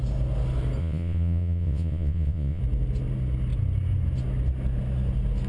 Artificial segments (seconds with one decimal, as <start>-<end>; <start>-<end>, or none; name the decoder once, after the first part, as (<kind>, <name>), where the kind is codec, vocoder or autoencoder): 0.8-2.6 (vocoder, Vocos)